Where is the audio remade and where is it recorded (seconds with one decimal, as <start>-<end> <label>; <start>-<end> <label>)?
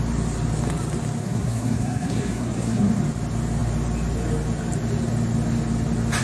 0.0-1.2 recorded; 1.2-2.9 remade; 2.9-6.2 recorded